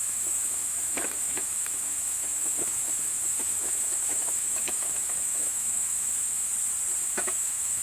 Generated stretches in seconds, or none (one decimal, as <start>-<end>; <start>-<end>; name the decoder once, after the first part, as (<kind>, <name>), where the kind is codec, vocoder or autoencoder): 0.0-6.5 (autoencoder, DAC-VAE); 7.0-7.8